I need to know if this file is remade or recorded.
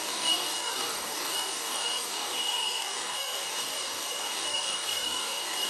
remade